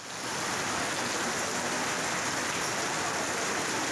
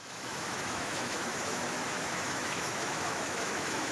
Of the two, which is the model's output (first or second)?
second